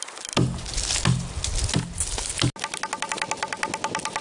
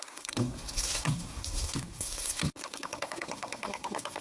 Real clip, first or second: first